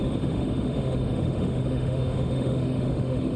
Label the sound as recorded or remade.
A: remade